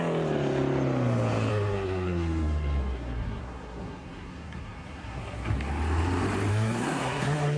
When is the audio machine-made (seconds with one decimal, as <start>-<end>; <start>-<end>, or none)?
1.5-5.7; 6.5-7.6